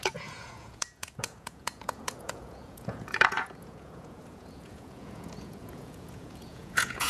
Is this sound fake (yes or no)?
yes